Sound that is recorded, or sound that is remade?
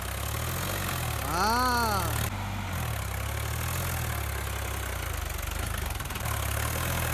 recorded